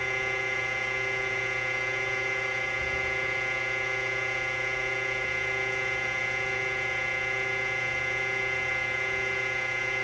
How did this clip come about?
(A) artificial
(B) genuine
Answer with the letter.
B